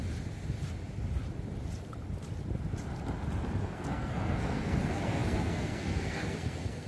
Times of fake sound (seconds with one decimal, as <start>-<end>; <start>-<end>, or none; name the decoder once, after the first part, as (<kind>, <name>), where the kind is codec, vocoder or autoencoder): 3.6-6.9 (codec, SNAC)